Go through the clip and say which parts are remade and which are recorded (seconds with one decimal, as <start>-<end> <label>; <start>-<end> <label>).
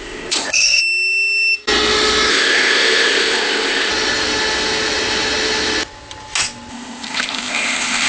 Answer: 0.0-0.8 remade; 0.8-2.3 recorded; 2.3-3.9 remade; 3.9-6.7 recorded; 6.7-8.1 remade